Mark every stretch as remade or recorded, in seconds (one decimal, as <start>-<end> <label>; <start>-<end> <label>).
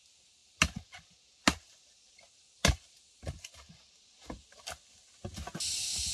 0.0-6.1 recorded